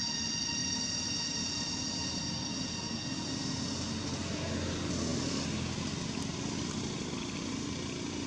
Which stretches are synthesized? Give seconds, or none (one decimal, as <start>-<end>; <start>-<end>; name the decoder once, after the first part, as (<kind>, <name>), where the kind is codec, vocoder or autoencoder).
none

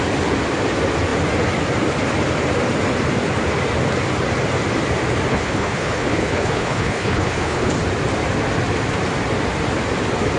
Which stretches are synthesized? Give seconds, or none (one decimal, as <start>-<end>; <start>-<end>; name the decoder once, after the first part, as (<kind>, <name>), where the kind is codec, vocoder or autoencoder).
5.3-7.7 (codec, HILCodec)

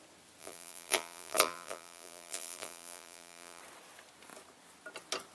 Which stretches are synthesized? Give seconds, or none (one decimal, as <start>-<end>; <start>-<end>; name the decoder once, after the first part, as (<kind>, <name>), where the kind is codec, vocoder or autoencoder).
0.4-3.6 (vocoder, BigVGAN v2)